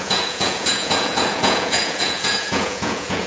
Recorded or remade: remade